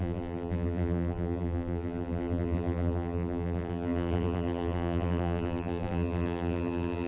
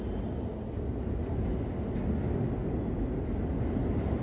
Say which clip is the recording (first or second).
second